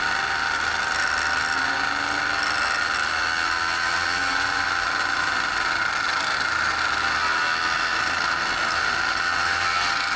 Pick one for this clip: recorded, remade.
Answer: recorded